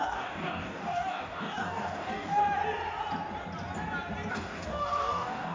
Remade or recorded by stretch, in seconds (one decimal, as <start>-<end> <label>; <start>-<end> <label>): 0.0-2.4 remade; 2.4-4.3 recorded; 4.3-5.5 remade